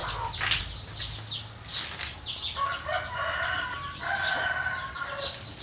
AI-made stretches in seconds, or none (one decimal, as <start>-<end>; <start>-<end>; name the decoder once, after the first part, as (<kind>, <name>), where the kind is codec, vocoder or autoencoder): none